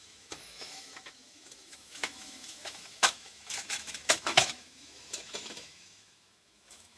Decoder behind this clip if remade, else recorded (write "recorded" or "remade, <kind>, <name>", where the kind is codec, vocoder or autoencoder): remade, autoencoder, DAC-VAE